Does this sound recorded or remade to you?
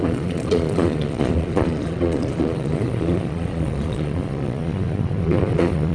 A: remade